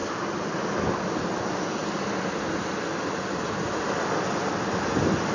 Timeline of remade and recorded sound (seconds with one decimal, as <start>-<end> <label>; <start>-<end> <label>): 0.0-5.3 recorded